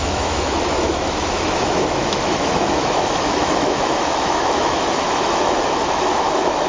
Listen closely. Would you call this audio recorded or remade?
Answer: remade